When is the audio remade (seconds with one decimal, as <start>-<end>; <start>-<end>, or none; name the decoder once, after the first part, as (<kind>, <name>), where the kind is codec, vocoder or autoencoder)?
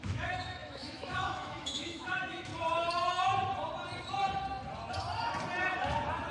0.0-2.5 (autoencoder, DAC-VAE)